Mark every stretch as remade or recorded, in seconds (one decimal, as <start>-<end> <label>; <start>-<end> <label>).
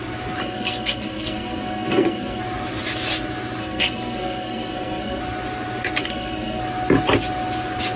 0.0-0.4 recorded; 0.4-2.4 remade; 2.4-3.6 recorded; 3.6-5.2 remade; 5.2-6.0 recorded; 6.0-6.6 remade; 6.6-8.0 recorded